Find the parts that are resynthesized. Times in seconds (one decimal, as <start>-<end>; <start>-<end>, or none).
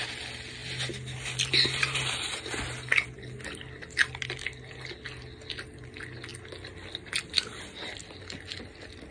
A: none